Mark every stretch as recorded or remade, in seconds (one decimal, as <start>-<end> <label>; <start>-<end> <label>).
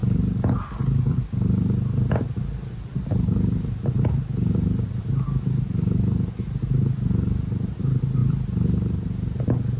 0.0-9.8 recorded